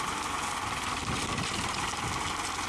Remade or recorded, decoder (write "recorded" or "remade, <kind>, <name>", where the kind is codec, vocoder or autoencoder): recorded